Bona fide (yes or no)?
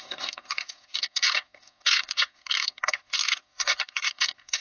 no